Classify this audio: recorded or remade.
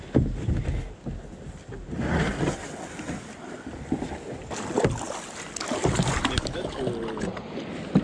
recorded